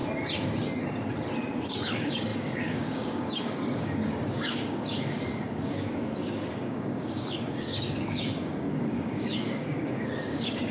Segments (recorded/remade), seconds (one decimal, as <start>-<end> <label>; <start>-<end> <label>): 0.0-1.7 recorded; 1.7-10.7 remade